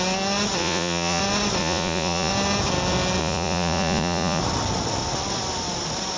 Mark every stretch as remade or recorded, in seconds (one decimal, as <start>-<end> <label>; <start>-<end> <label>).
0.0-0.6 recorded; 0.6-1.2 remade; 1.2-1.6 recorded; 1.6-2.3 remade; 2.3-3.2 recorded; 3.2-4.4 remade; 4.4-6.2 recorded